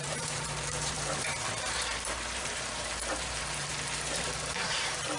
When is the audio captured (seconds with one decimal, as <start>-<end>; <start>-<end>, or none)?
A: 3.7-4.2